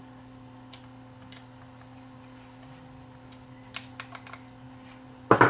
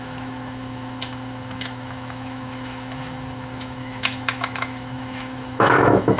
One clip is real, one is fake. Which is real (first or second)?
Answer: first